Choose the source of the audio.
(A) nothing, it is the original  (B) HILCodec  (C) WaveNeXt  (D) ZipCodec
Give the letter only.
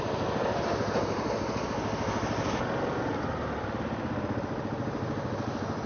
A